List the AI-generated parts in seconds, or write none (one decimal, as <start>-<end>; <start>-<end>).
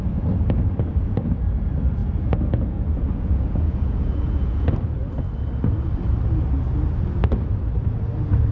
2.0-4.7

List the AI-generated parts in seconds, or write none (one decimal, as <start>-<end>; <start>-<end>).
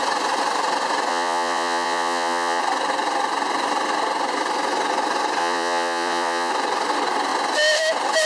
1.1-2.6; 5.4-6.5